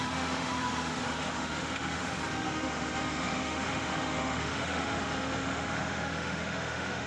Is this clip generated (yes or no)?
yes